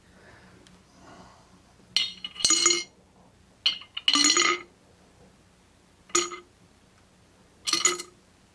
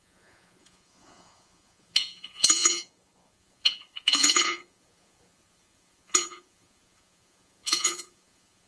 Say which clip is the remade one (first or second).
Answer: second